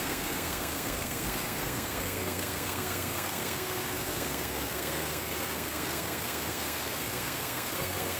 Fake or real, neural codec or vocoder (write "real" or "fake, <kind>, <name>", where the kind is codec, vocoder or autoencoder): fake, codec, SNAC